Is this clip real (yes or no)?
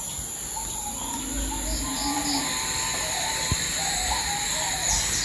yes